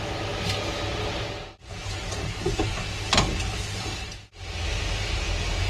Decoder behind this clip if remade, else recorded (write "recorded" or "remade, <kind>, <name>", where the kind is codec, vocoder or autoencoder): recorded